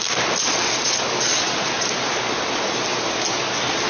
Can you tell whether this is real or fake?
real